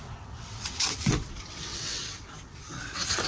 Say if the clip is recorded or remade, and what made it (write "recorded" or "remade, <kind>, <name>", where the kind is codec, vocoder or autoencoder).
remade, vocoder, WaveNeXt